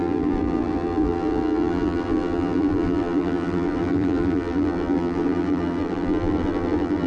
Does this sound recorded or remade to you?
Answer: remade